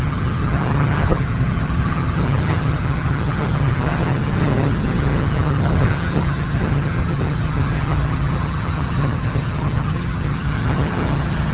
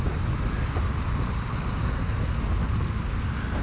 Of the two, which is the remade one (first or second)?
first